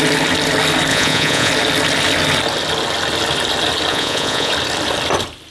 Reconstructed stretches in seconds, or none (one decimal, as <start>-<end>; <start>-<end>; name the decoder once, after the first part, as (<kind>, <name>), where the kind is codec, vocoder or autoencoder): 0.9-1.5 (vocoder, Vocos); 3.9-4.5